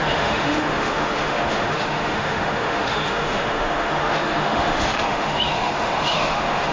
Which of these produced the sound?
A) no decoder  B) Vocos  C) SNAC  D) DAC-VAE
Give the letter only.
D